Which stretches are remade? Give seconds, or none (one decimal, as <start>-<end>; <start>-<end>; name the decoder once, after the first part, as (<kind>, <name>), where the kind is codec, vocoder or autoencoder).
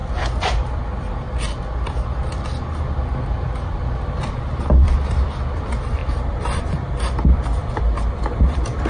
4.6-8.9 (vocoder, BigVGAN v2)